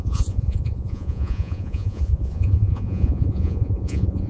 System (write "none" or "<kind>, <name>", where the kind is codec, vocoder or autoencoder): vocoder, Vocos